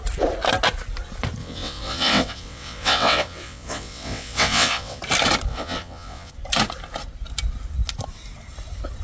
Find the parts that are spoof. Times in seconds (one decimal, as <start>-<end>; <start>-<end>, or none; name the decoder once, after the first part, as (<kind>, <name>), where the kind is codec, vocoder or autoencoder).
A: 1.4-5.0 (vocoder, WaveNeXt); 5.5-6.3